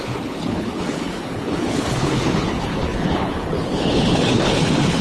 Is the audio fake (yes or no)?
yes